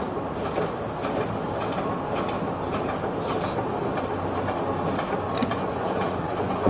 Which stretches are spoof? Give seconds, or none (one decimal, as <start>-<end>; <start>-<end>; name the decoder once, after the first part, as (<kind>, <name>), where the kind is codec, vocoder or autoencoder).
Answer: 5.4-6.7 (vocoder, Vocos)